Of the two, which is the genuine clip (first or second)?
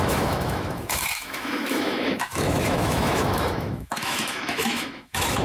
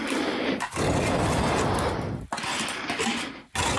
second